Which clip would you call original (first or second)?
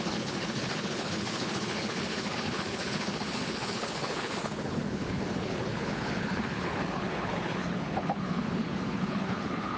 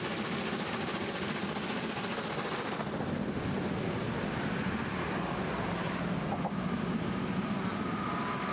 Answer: second